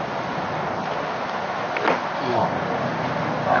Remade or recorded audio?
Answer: recorded